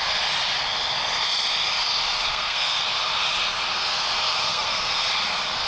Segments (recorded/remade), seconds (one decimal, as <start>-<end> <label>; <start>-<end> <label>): 0.0-2.3 recorded; 2.3-2.8 remade; 2.8-4.5 recorded; 4.5-5.1 remade; 5.1-5.7 recorded